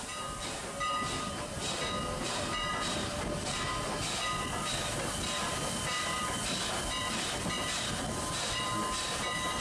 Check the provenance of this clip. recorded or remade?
recorded